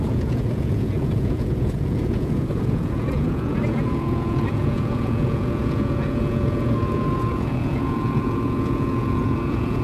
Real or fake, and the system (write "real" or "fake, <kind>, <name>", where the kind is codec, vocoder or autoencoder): fake, vocoder, Vocos